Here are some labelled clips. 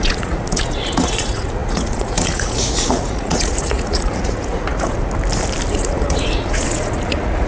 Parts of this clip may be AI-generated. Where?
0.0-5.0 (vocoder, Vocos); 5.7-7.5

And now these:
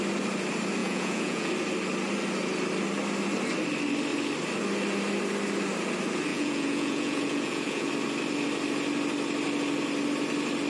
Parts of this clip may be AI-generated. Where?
0.8-1.5 (vocoder, Vocos); 6.3-7.9

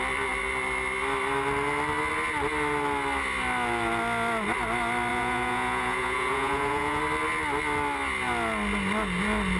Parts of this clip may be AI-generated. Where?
5.1-7.0 (vocoder, Vocos)

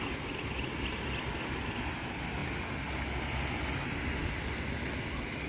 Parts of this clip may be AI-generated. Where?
none

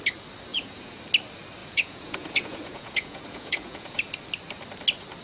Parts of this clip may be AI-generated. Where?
0.5-1.0 (vocoder, Vocos); 1.6-4.1